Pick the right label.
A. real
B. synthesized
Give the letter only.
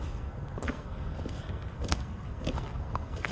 B